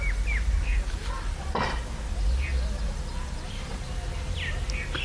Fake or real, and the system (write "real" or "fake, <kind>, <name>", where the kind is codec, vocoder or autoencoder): real